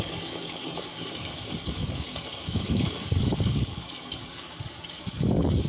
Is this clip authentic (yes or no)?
no